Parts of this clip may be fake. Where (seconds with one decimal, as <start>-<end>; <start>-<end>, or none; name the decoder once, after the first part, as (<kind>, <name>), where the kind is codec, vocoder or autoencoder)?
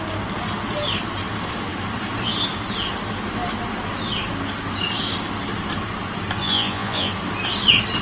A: 6.4-7.1 (vocoder, Vocos)